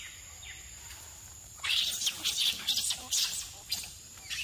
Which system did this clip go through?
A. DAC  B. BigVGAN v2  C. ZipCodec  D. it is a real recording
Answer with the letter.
B